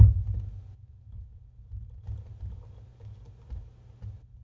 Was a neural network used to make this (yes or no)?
no